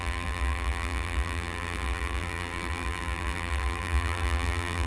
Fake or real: fake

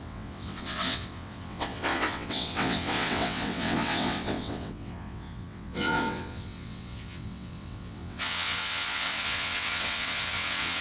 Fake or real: fake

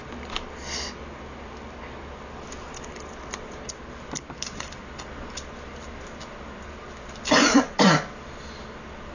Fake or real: real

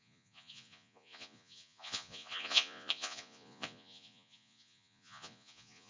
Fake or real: fake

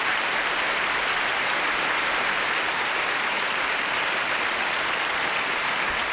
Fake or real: fake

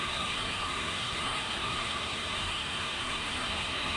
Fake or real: fake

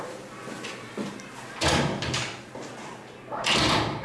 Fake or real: real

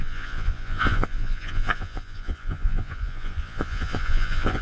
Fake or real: fake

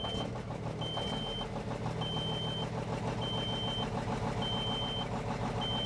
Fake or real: real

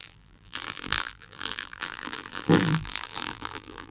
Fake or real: fake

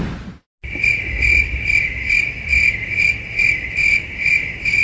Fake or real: real